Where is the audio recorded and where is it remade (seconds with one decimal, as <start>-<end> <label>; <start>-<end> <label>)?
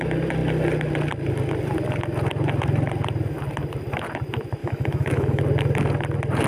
0.0-4.6 recorded; 4.6-5.4 remade; 5.4-6.5 recorded